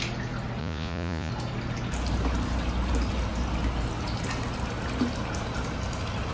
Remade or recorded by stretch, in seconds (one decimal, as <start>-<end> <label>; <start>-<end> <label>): 0.0-0.6 recorded; 0.6-1.3 remade; 1.3-6.3 recorded